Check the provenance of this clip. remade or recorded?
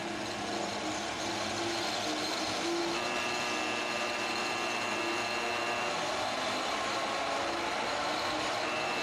recorded